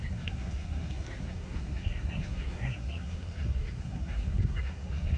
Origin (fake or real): fake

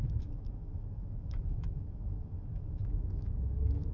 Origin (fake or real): fake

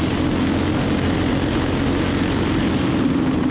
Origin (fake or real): real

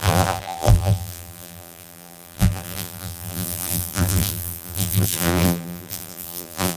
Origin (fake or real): fake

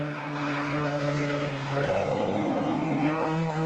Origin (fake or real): fake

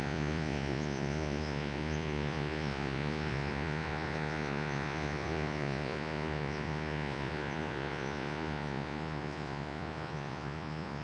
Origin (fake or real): fake